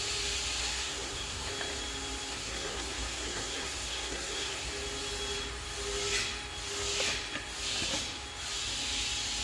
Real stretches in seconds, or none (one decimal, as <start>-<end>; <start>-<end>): 0.0-0.6; 1.5-2.3; 4.7-9.4